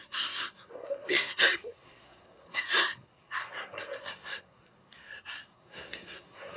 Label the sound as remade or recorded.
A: remade